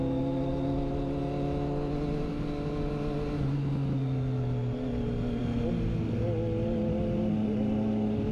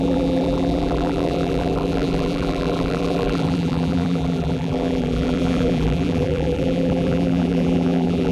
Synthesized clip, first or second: second